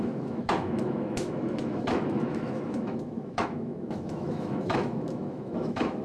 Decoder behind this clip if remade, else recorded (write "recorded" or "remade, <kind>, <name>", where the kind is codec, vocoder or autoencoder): remade, autoencoder, DAC-VAE